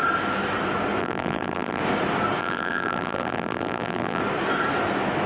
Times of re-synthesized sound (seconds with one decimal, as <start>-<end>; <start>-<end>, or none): 1.0-1.8; 2.4-4.2